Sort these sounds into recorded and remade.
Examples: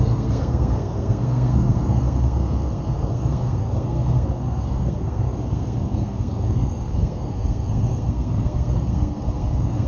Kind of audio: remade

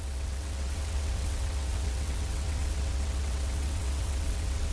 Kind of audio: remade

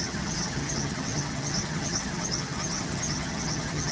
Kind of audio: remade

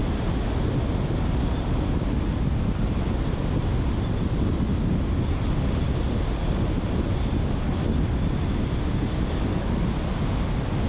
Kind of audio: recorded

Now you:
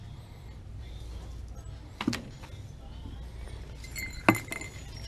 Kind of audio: recorded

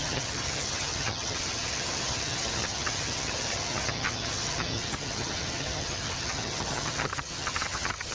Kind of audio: remade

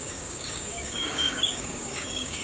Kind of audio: remade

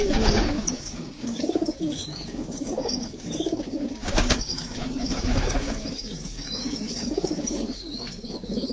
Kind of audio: remade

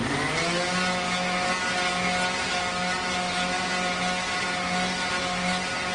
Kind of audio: recorded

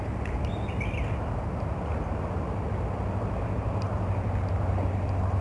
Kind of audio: recorded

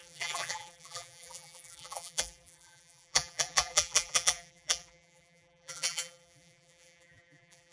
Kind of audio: remade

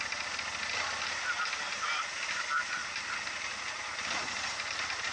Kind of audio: recorded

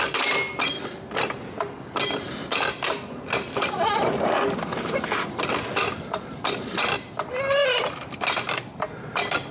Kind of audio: recorded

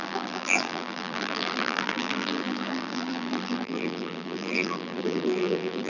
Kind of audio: remade